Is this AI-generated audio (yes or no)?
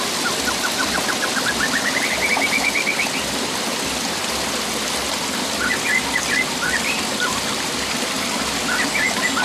no